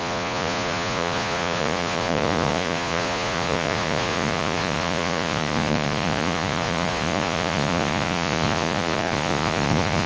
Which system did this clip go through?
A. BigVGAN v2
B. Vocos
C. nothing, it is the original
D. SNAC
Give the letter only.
B